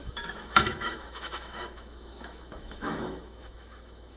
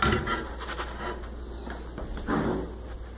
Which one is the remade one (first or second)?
first